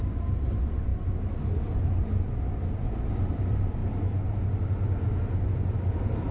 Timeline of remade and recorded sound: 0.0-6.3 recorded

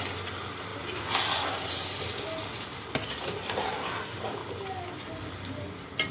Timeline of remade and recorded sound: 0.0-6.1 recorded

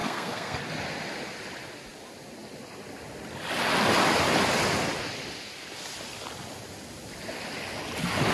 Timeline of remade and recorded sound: 0.0-0.6 remade; 0.6-8.3 recorded

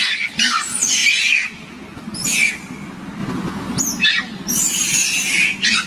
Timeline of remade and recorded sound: 0.0-5.9 recorded

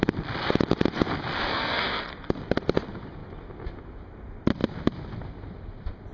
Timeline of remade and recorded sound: 0.0-1.5 recorded; 1.5-2.3 remade; 2.3-6.1 recorded

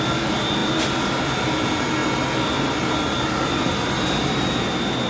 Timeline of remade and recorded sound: 0.0-5.1 recorded

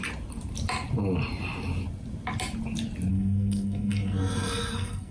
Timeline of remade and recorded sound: 0.0-3.1 recorded; 3.1-5.1 remade